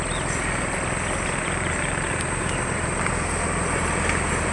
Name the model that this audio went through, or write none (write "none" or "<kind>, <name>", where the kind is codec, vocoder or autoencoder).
none